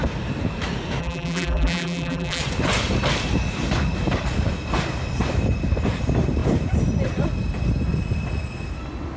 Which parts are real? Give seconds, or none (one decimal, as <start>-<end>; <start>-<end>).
0.0-1.0; 2.4-9.2